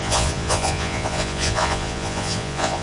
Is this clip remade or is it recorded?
remade